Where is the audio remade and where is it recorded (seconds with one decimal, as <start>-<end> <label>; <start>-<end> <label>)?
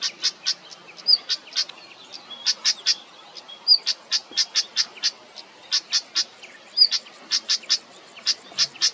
0.0-8.9 recorded